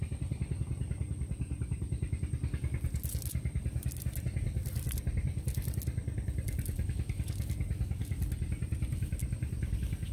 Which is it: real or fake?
real